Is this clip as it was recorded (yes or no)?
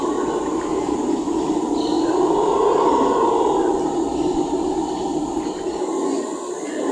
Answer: yes